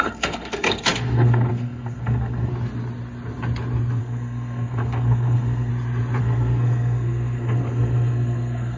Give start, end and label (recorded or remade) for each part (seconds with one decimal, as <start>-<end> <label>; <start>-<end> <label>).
0.0-2.5 remade; 2.5-4.0 recorded; 4.0-5.7 remade; 5.7-6.2 recorded; 6.2-8.8 remade